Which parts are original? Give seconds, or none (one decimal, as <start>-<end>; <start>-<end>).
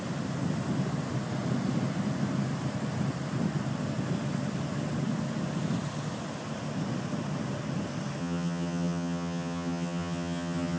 0.0-8.2